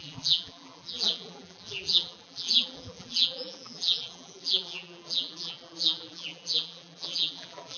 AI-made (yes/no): yes